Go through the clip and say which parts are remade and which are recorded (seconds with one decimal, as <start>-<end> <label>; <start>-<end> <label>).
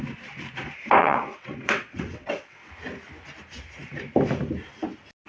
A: 0.0-1.0 recorded; 1.0-2.7 remade; 2.7-5.3 recorded